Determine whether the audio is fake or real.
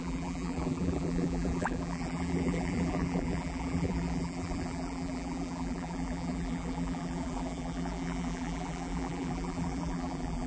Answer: fake